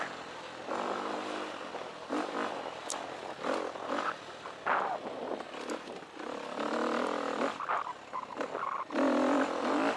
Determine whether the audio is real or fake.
real